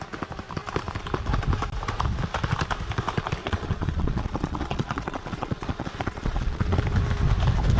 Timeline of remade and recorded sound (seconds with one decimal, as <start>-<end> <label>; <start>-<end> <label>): 0.0-3.4 recorded; 3.4-6.8 remade; 6.8-7.8 recorded